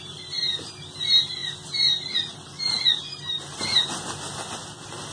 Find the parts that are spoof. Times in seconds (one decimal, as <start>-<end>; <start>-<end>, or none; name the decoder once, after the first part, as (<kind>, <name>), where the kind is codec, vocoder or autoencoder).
none